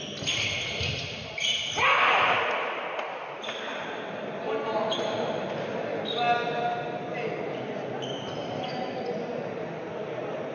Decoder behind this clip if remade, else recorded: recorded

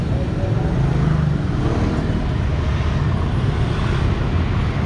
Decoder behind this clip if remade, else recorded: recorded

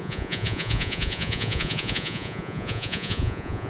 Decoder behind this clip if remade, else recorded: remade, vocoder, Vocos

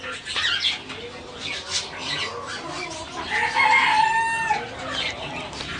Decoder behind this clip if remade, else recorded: recorded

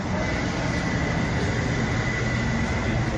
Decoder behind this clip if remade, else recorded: recorded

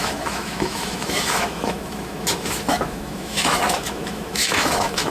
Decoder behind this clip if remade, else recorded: remade, autoencoder, DAC-VAE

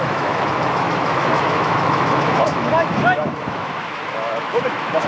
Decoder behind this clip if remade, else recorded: remade, autoencoder, DAC-VAE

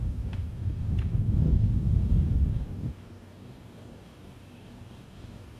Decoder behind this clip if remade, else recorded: remade, codec, DAC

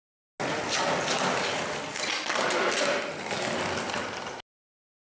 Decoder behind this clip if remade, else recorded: recorded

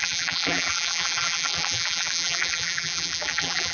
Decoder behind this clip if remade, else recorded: remade, vocoder, BigVGAN v2